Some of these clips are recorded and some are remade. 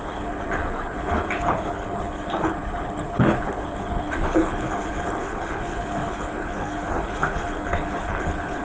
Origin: remade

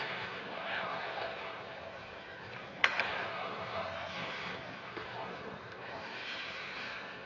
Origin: remade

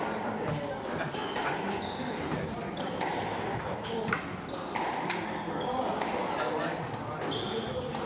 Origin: recorded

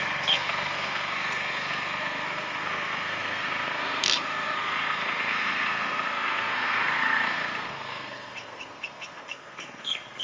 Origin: remade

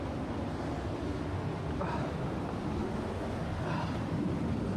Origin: recorded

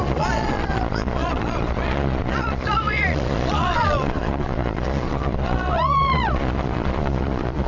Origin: remade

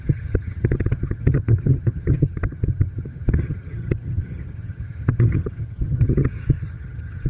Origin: remade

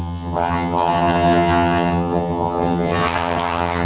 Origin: remade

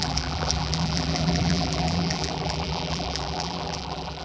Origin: remade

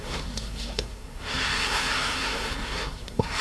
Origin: remade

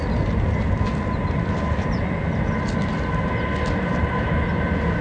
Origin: recorded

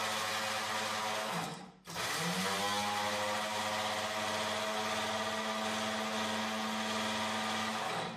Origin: recorded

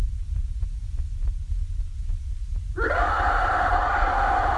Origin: recorded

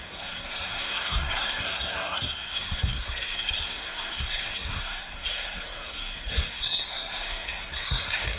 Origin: remade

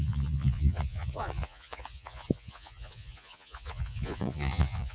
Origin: remade